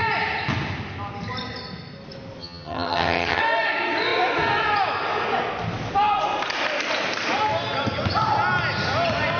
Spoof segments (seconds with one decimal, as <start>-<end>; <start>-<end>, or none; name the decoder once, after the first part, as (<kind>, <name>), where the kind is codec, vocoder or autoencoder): 2.4-3.4 (vocoder, HiFi-GAN)